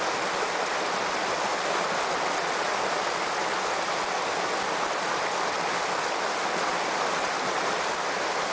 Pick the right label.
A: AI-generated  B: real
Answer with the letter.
B